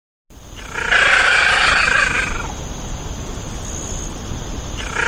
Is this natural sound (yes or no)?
yes